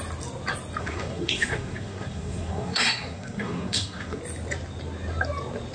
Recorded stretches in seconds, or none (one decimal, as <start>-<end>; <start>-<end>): 0.0-0.8; 4.2-5.7